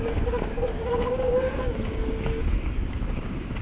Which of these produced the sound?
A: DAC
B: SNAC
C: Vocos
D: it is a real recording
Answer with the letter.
A